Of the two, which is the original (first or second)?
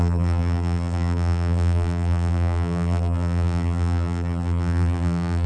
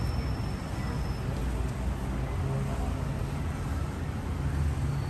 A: second